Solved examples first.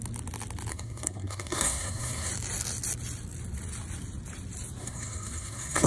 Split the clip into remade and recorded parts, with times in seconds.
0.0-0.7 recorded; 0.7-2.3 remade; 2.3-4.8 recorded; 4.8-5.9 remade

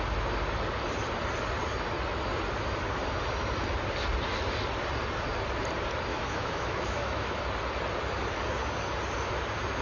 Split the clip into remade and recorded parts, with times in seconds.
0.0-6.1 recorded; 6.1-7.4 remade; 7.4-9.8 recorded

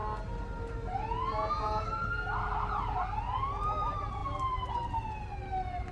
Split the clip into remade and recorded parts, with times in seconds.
0.0-5.9 recorded

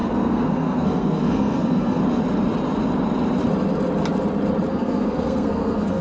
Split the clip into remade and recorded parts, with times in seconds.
0.0-2.0 remade; 2.0-4.7 recorded; 4.7-6.0 remade

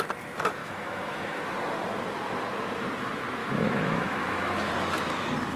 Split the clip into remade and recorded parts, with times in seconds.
0.0-0.6 recorded; 0.6-1.4 remade; 1.4-3.4 recorded; 3.4-4.7 remade; 4.7-5.6 recorded